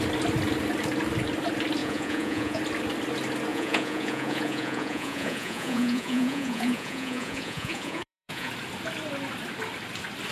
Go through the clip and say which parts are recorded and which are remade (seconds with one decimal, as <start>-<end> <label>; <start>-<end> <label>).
0.0-1.8 recorded; 1.8-2.6 remade; 2.6-3.5 recorded; 3.5-8.5 remade; 8.5-10.3 recorded